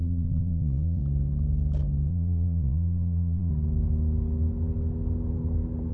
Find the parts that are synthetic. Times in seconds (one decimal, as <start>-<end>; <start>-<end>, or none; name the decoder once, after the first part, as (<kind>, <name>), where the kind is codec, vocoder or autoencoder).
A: 0.0-1.0 (vocoder, Vocos); 2.1-3.5